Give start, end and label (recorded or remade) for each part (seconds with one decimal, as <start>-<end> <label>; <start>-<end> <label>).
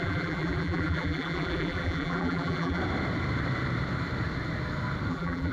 0.0-2.8 remade; 2.8-5.1 recorded; 5.1-5.5 remade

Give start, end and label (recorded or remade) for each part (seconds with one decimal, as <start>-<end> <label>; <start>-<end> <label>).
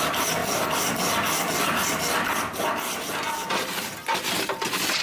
0.0-5.0 recorded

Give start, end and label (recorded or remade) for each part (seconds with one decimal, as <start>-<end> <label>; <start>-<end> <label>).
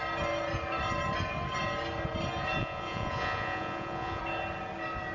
0.0-2.6 recorded; 2.6-4.2 remade; 4.2-5.1 recorded